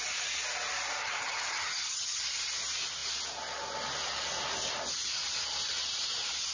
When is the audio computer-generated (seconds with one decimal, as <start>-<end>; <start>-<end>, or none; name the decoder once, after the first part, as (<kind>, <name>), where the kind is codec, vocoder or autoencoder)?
1.0-2.2 (vocoder, HiFi-GAN)